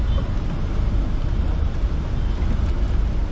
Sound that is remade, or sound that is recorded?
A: recorded